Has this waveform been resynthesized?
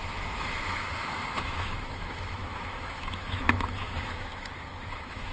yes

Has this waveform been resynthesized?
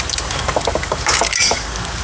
yes